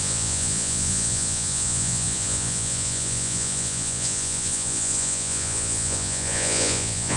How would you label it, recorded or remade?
remade